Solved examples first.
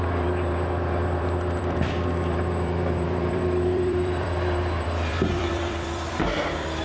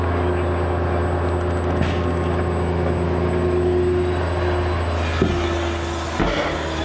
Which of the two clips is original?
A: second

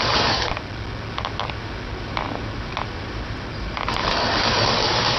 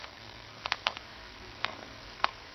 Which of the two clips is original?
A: first